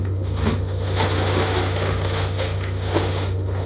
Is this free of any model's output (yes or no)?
no